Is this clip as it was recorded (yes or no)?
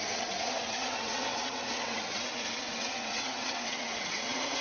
no